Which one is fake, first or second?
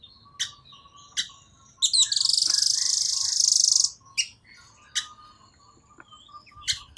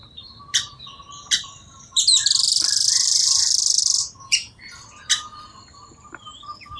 second